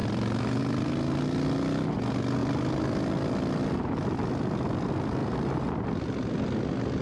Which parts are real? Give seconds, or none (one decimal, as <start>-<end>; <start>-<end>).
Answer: 0.6-5.2; 5.7-7.0